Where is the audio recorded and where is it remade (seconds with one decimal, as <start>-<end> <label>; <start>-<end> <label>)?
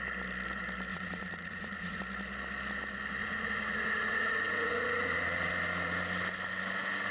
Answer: 0.0-0.9 recorded; 0.9-2.0 remade; 2.0-3.2 recorded; 3.2-5.5 remade; 5.5-7.1 recorded